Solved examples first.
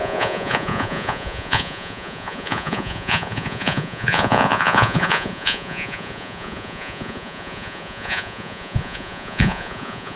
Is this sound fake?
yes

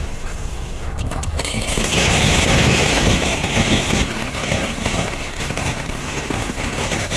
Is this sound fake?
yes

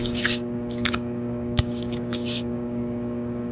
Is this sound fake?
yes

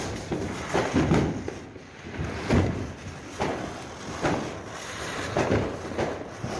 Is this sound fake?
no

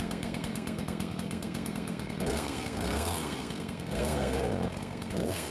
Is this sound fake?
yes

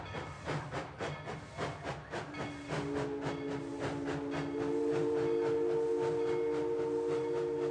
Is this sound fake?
no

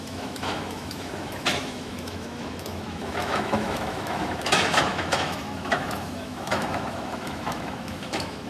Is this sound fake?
yes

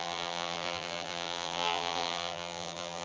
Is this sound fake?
yes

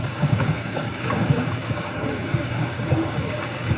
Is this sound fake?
yes